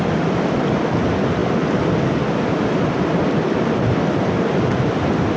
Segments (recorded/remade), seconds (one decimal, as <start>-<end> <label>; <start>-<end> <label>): 0.0-5.4 recorded